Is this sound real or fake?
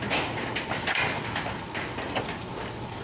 real